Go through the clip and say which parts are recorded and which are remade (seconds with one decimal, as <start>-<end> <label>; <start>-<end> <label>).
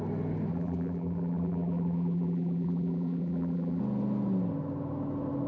0.0-0.5 recorded; 0.5-3.8 remade; 3.8-5.5 recorded